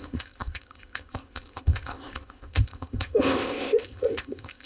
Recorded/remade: remade